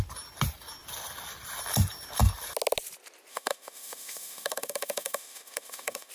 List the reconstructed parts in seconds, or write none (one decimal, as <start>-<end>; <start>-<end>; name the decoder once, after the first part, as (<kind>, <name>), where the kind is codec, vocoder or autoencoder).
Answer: 3.3-6.1 (autoencoder, DAC-VAE)